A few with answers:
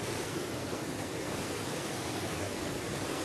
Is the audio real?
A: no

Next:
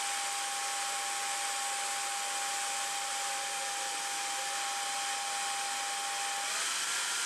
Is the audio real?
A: yes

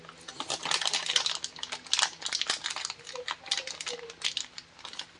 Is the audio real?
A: yes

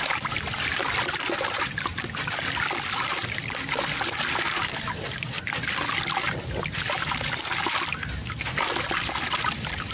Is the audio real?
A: yes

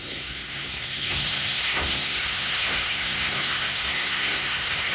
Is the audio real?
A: no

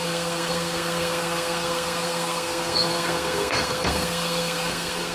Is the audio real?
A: no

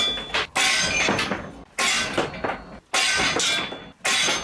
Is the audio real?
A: yes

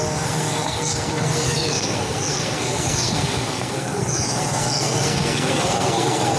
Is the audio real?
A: no